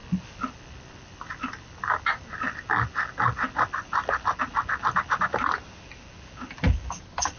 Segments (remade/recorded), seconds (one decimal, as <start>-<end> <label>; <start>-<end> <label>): 0.0-7.4 recorded